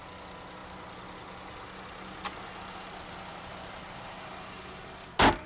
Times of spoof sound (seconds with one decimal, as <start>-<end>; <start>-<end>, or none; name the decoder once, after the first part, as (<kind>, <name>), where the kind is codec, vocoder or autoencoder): none